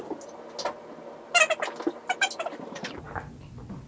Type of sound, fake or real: real